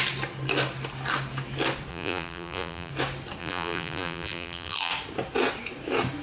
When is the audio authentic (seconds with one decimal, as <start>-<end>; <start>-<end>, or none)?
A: 0.0-1.9; 2.9-3.4; 4.9-6.2